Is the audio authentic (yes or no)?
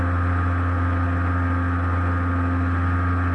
yes